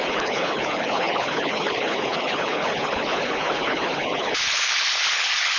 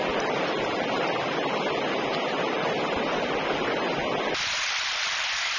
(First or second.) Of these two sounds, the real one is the second